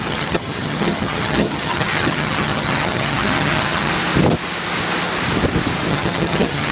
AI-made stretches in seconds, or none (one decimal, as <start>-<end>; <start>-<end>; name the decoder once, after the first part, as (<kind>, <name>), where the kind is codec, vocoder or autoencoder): 0.0-3.9 (vocoder, HiFi-GAN); 5.9-6.7